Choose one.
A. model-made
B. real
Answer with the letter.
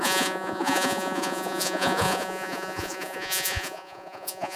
A